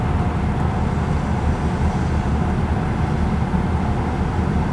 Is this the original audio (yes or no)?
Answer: yes